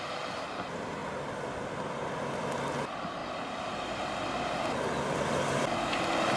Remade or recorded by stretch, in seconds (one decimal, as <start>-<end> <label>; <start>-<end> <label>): 0.0-6.4 recorded